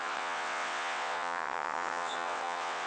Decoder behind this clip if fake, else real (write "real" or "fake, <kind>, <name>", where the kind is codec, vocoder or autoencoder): fake, vocoder, WaveNeXt